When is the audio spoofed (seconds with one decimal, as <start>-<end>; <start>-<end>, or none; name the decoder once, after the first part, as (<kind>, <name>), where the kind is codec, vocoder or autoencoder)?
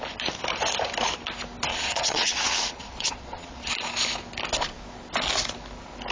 1.7-3.7 (vocoder, Vocos)